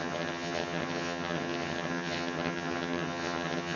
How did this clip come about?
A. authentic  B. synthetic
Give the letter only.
B